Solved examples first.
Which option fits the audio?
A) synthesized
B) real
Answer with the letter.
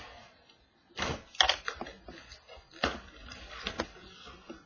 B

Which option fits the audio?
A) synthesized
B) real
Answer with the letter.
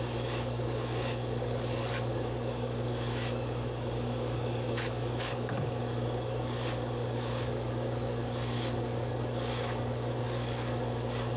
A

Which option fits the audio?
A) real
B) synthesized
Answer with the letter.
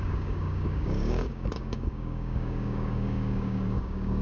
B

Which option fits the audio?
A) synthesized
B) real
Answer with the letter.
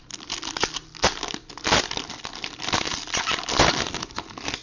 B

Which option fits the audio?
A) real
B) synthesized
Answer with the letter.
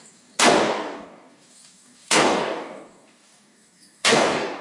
B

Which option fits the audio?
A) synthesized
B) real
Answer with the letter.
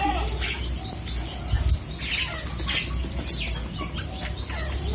B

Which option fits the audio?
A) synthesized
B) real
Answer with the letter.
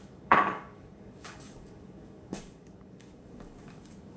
A